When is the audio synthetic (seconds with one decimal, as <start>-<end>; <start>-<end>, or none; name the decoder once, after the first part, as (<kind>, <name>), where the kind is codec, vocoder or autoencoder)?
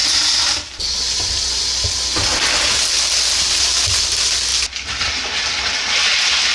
none